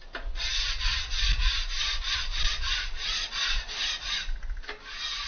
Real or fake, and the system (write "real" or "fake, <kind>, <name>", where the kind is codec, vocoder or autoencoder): real